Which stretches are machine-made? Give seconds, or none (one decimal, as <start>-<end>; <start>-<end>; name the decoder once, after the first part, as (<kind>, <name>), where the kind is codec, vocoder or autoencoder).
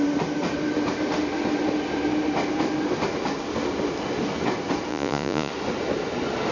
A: 4.9-5.5 (vocoder, Vocos)